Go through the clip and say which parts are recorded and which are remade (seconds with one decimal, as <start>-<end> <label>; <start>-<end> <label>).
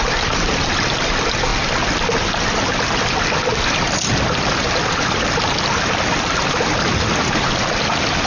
0.0-8.3 recorded